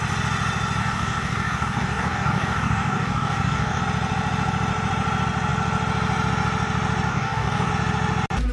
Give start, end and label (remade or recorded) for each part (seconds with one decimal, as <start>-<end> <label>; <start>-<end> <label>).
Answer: 0.0-0.8 recorded; 0.8-3.8 remade; 3.8-7.1 recorded; 7.1-7.7 remade; 7.7-8.5 recorded